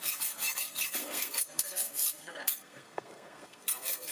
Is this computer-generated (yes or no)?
yes